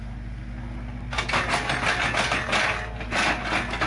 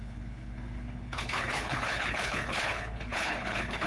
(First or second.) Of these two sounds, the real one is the first